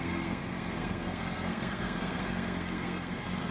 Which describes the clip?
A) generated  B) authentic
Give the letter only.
A